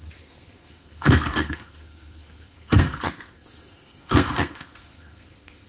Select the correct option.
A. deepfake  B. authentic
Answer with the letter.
A